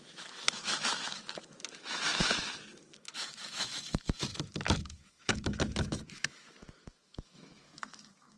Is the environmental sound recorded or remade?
remade